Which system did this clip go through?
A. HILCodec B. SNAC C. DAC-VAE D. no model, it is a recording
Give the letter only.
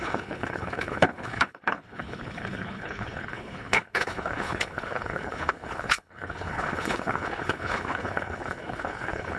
A